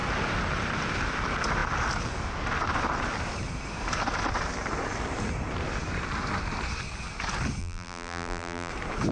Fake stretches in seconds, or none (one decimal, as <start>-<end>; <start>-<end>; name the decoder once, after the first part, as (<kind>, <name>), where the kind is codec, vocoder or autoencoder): 7.6-8.7 (vocoder, BigVGAN v2)